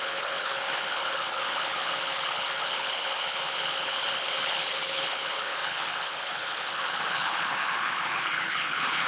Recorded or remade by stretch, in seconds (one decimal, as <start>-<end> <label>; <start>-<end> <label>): 0.0-9.1 remade